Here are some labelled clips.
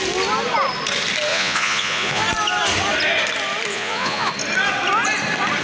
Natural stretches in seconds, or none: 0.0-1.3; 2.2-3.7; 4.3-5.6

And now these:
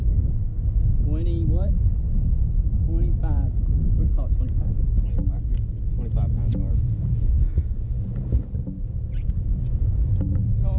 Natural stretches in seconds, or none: 0.0-6.5